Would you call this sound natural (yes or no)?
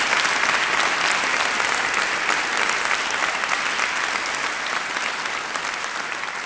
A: yes